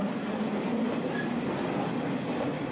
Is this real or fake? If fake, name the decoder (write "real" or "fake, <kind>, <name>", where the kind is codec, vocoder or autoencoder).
real